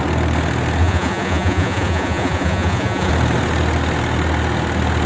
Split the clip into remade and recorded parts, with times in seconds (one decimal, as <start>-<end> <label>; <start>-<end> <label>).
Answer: 0.0-0.8 recorded; 0.8-3.1 remade; 3.1-5.1 recorded